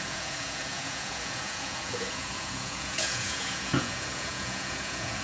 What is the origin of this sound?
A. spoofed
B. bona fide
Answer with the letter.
A